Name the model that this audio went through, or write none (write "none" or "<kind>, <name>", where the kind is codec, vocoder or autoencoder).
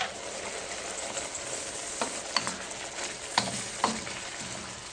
none